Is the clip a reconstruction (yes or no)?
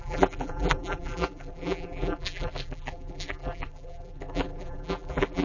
yes